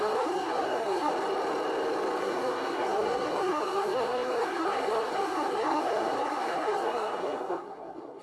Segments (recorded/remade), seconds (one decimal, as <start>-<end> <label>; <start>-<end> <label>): 0.0-1.1 remade; 1.1-2.2 recorded; 2.2-8.2 remade